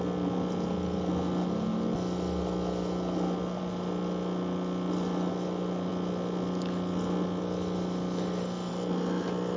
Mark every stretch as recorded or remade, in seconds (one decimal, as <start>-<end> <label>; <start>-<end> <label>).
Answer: 0.0-9.6 recorded